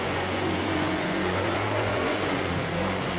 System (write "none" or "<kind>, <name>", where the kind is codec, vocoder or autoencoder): vocoder, Vocos